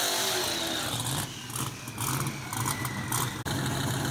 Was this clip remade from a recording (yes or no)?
no